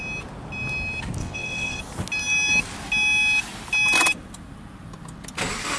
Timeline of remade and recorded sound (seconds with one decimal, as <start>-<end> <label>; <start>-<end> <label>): 0.0-1.2 recorded; 1.2-1.8 remade; 1.8-5.8 recorded